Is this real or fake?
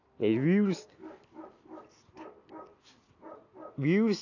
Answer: real